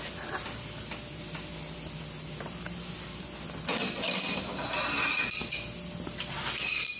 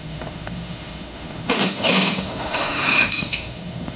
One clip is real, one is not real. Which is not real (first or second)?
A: second